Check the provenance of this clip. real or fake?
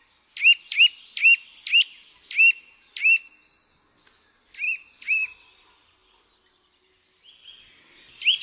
real